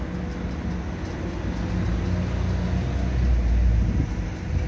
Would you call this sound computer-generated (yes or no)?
no